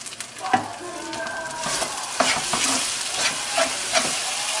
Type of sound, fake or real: real